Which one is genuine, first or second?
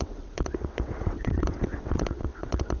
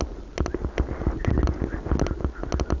second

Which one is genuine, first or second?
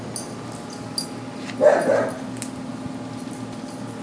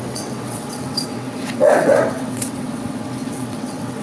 first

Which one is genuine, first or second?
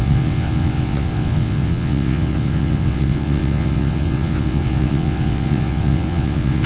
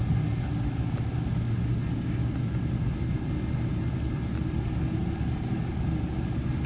second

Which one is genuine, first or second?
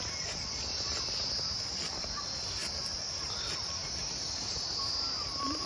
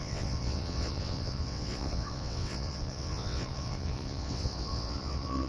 first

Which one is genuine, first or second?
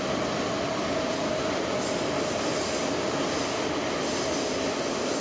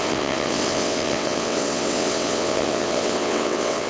first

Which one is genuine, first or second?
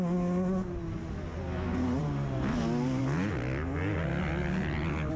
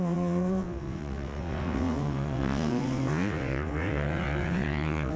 first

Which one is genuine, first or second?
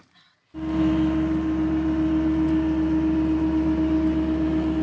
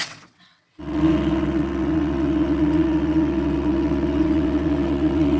first